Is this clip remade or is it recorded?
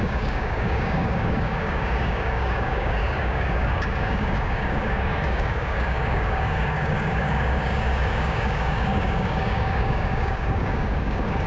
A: remade